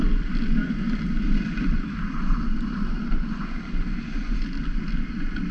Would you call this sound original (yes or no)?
yes